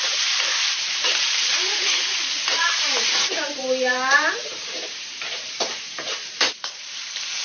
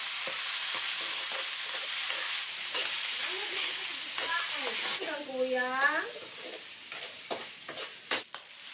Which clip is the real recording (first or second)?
second